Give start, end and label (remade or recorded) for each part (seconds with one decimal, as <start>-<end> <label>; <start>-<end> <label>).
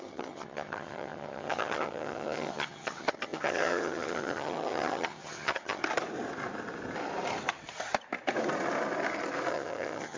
0.0-5.8 remade; 5.8-9.5 recorded; 9.5-10.2 remade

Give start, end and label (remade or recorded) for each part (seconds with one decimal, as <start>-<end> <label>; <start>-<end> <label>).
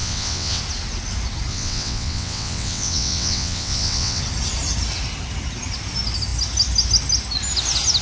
0.0-0.6 remade; 0.6-1.5 recorded; 1.5-4.2 remade; 4.2-8.0 recorded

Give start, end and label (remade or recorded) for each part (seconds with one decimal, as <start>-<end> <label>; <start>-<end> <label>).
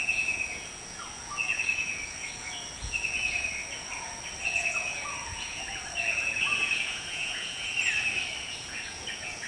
0.0-7.7 remade; 7.7-8.4 recorded; 8.4-9.5 remade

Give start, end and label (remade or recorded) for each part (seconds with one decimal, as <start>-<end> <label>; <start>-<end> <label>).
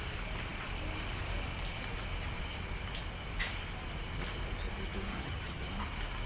0.0-5.1 recorded; 5.1-5.7 remade; 5.7-6.3 recorded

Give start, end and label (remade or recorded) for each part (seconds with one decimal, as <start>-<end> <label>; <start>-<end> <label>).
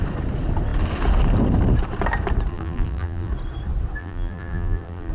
0.0-2.5 recorded; 2.5-3.3 remade; 3.3-4.0 recorded; 4.0-5.1 remade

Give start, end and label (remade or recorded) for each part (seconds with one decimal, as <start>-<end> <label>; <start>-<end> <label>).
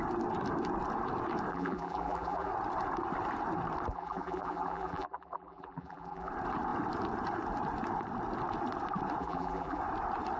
0.0-1.5 recorded; 1.5-2.5 remade; 2.5-3.9 recorded; 3.9-6.3 remade; 6.3-9.2 recorded; 9.2-9.8 remade; 9.8-10.4 recorded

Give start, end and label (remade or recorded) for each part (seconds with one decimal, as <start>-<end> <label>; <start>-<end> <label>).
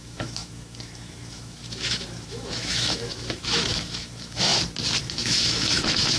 0.0-4.5 remade; 4.5-5.0 recorded; 5.0-6.2 remade